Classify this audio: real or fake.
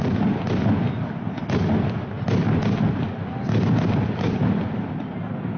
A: real